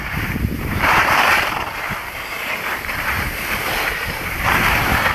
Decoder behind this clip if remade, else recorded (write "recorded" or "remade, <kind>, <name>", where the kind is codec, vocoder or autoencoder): remade, vocoder, BigVGAN v2